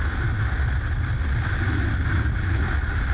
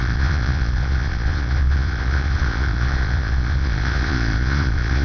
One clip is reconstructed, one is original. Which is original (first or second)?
first